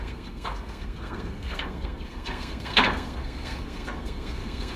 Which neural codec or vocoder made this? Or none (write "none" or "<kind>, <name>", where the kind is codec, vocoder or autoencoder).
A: codec, SNAC